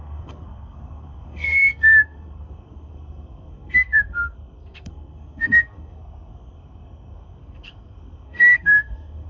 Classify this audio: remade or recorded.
remade